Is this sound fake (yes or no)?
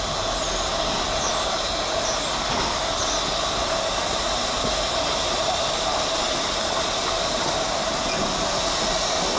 no